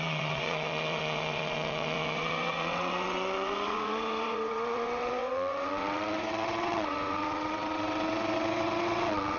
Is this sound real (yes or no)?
no